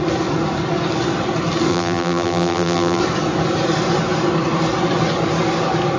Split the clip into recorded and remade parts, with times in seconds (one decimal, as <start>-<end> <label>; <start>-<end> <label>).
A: 0.0-1.7 recorded; 1.7-3.0 remade; 3.0-6.0 recorded